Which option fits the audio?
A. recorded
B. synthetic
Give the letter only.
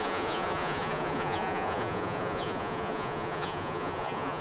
B